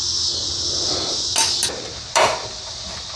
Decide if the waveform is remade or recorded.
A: recorded